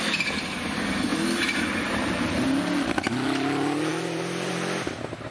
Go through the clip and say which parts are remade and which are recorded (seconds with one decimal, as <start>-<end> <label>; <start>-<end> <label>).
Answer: 0.0-5.3 recorded